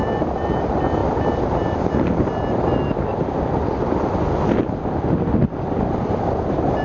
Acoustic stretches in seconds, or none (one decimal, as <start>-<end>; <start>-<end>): 0.0-6.8